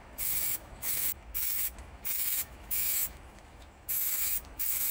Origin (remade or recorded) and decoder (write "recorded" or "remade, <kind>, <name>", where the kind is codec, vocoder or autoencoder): remade, autoencoder, DAC-VAE